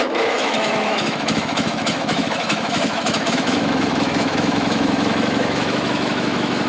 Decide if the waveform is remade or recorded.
remade